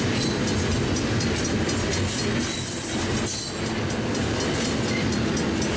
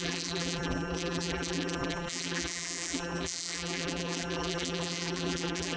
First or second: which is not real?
second